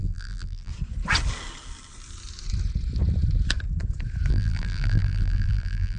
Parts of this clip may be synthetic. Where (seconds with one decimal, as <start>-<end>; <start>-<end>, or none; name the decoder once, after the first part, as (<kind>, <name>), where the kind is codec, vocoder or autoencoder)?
0.0-0.7 (vocoder, BigVGAN v2); 4.3-6.0